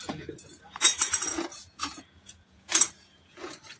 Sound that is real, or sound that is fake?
fake